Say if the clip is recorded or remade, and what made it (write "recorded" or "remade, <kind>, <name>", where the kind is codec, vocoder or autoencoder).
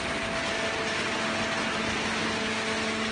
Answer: recorded